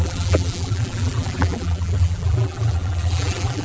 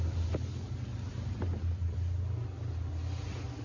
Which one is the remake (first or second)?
first